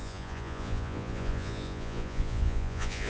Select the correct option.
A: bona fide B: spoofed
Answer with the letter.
B